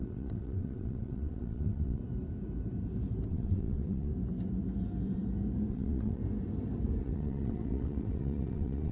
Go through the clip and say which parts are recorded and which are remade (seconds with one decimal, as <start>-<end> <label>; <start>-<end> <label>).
0.0-2.0 remade; 2.0-3.3 recorded; 3.3-4.1 remade; 4.1-5.7 recorded; 5.7-6.2 remade; 6.2-7.0 recorded; 7.0-8.9 remade